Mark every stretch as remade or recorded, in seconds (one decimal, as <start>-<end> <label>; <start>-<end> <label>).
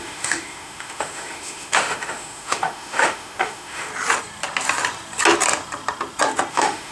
0.0-3.9 remade; 3.9-6.5 recorded; 6.5-6.9 remade